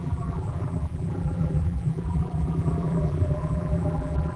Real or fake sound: fake